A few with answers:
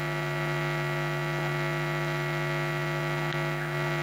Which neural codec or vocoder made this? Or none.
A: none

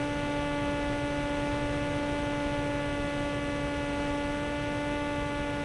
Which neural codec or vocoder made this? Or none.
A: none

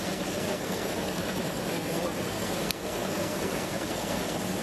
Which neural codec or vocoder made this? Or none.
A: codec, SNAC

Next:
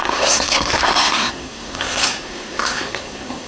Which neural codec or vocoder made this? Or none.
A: codec, SNAC